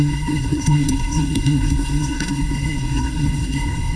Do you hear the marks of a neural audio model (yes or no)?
yes